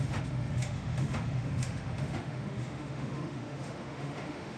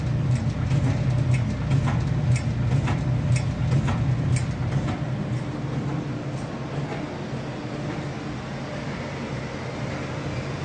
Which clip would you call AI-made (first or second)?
first